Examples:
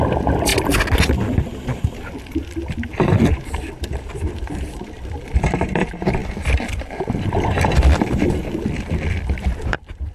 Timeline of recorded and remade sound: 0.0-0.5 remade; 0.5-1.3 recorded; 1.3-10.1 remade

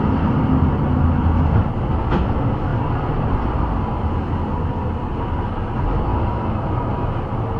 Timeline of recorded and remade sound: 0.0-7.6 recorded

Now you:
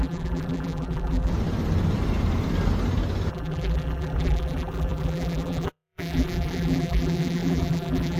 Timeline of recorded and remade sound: 0.0-1.3 remade; 1.3-3.3 recorded; 3.3-8.2 remade

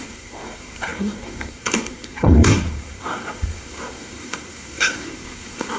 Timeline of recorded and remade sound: 0.0-5.8 remade

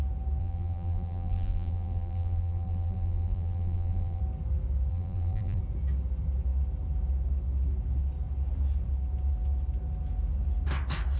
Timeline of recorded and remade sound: 0.0-0.4 recorded; 0.4-4.2 remade; 4.2-4.9 recorded; 4.9-5.6 remade; 5.6-11.2 recorded

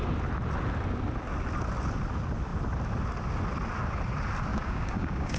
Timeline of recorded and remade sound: 0.0-4.5 recorded; 4.5-5.4 remade

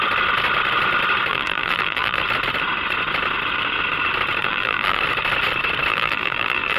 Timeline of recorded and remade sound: 0.0-1.3 recorded; 1.3-2.2 remade; 2.2-4.4 recorded; 4.4-5.0 remade; 5.0-5.9 recorded; 5.9-6.8 remade